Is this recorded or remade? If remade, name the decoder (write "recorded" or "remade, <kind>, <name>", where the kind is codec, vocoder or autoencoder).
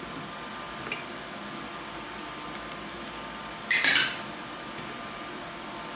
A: recorded